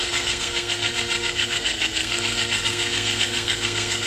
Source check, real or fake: fake